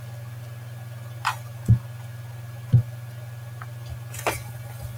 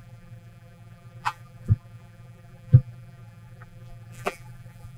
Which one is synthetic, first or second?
second